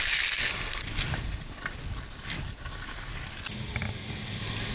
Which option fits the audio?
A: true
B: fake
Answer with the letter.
A